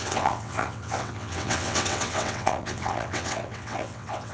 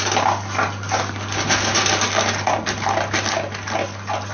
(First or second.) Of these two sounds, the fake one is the first